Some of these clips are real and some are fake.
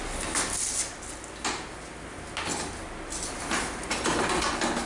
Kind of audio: real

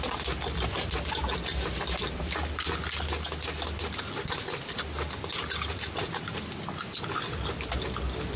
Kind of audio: real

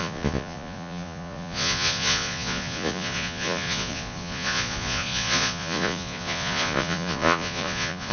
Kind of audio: fake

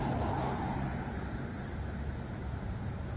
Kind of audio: real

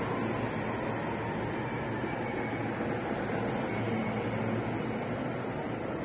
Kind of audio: real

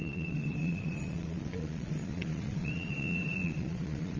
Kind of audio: fake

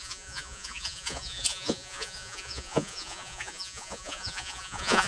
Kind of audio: fake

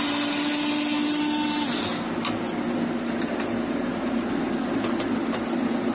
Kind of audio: real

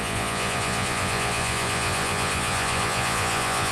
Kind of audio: fake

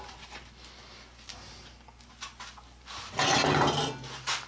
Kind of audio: real